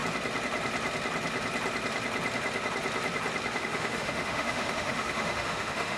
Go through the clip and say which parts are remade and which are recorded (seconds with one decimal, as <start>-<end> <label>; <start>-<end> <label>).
0.0-3.6 recorded; 3.6-6.0 remade